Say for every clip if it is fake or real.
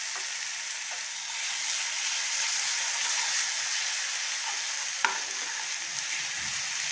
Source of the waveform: real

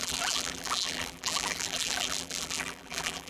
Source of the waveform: fake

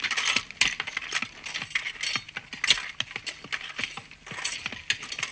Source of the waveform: real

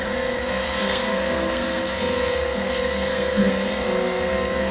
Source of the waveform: fake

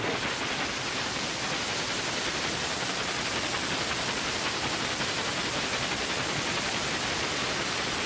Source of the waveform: real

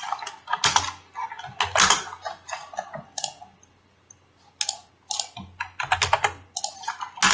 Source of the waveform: real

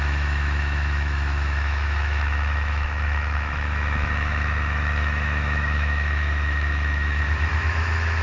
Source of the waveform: fake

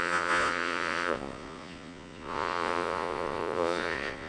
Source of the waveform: fake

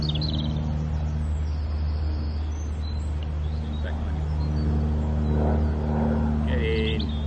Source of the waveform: real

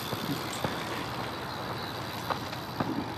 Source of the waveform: real